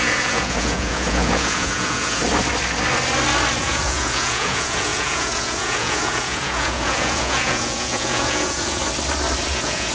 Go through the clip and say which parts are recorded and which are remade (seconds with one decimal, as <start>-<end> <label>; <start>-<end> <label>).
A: 0.0-2.2 remade; 2.2-3.6 recorded; 3.6-8.8 remade; 8.8-9.5 recorded; 9.5-9.9 remade